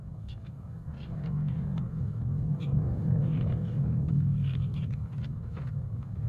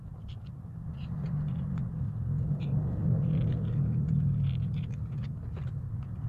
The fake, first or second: first